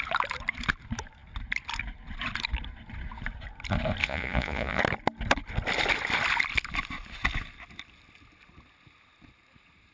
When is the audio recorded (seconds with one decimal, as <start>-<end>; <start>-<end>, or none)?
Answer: 0.0-4.0; 4.8-9.9